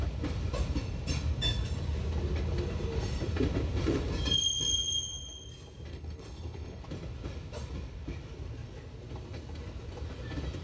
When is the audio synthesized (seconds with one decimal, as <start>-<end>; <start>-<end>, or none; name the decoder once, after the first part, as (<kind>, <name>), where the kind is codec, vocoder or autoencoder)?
5.9-6.8 (codec, HILCodec)